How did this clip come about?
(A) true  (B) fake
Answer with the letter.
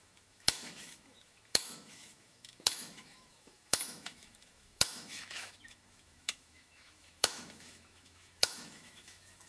B